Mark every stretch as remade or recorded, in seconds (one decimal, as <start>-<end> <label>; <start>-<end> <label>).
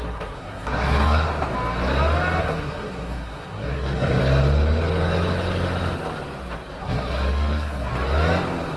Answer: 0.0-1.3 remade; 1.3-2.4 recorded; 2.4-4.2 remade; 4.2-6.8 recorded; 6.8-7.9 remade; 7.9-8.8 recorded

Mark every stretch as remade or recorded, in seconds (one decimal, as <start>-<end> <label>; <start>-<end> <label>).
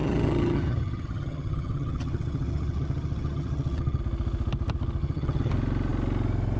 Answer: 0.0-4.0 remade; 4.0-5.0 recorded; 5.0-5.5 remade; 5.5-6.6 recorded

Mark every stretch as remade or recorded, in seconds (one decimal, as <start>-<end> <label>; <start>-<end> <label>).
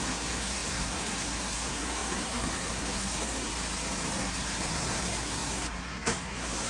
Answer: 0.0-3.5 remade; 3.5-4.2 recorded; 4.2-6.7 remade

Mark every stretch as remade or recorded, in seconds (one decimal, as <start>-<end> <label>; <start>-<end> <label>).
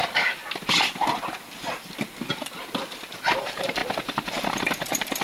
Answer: 0.0-0.4 remade; 0.4-3.3 recorded; 3.3-5.2 remade